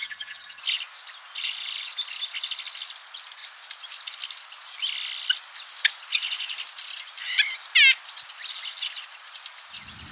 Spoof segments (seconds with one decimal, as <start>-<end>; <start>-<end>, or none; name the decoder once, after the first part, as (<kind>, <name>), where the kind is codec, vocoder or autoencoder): 0.0-0.6 (vocoder, HiFi-GAN)